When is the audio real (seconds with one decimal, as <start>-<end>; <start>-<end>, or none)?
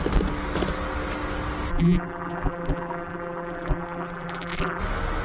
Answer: 0.0-1.7; 4.8-5.2